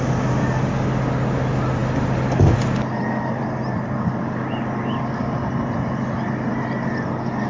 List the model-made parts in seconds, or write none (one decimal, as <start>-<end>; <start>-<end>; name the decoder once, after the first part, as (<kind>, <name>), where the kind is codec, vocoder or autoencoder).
none